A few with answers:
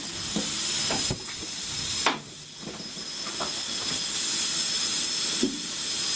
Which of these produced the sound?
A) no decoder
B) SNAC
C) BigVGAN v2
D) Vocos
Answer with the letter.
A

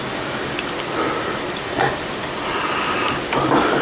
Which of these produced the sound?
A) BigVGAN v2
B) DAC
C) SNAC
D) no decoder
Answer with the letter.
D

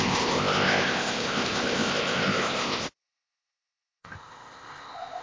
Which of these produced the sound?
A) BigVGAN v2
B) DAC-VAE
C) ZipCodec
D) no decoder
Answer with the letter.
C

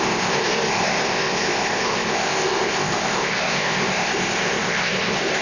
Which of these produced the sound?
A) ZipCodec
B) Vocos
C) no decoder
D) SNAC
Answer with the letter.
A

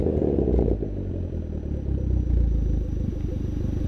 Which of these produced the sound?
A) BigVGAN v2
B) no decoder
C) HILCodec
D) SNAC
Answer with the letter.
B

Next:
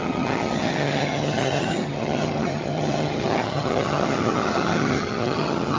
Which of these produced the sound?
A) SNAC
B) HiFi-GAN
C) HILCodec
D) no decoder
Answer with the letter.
B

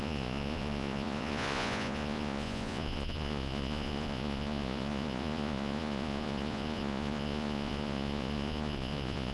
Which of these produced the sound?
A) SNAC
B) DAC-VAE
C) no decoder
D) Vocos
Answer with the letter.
D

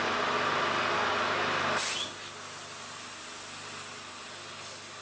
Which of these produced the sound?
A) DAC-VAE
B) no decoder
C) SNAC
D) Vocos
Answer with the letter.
B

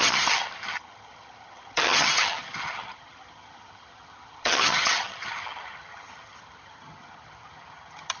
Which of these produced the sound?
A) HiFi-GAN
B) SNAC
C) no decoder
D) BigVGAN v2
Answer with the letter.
A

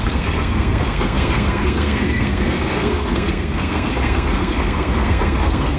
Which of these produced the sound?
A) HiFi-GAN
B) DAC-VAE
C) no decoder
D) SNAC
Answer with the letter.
D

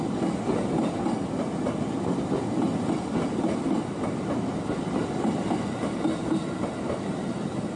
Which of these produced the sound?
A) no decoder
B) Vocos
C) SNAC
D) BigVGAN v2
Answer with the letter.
A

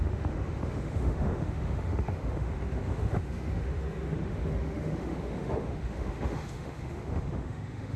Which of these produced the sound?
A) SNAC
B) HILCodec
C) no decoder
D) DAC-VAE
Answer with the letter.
D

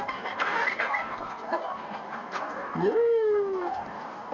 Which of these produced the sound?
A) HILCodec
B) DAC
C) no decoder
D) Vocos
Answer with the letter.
B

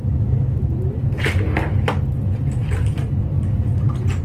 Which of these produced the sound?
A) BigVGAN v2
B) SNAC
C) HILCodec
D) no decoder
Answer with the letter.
A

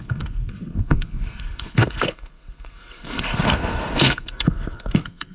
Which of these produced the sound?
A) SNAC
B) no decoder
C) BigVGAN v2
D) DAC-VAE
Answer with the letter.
A